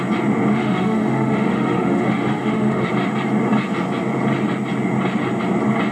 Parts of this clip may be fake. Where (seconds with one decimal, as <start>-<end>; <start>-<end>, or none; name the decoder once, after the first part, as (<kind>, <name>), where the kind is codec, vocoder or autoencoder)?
0.5-2.9 (autoencoder, DAC-VAE)